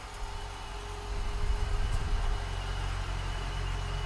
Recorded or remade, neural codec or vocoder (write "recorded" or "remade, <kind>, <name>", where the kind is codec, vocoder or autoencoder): recorded